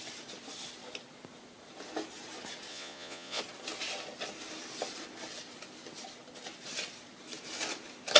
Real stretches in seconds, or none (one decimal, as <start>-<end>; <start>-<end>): 0.0-2.7; 3.4-8.2